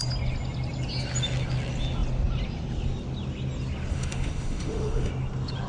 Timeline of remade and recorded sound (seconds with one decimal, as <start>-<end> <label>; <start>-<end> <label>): 0.0-3.9 recorded; 3.9-5.1 remade; 5.1-5.7 recorded